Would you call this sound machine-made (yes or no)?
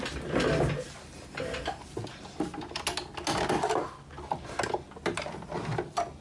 no